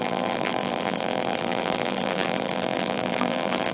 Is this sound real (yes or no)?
no